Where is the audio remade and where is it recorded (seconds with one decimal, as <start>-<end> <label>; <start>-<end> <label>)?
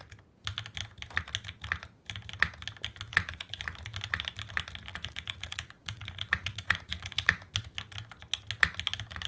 0.0-3.1 recorded; 3.1-3.6 remade; 3.6-4.9 recorded; 4.9-7.5 remade; 7.5-9.3 recorded